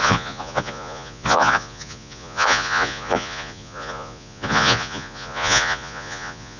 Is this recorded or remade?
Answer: remade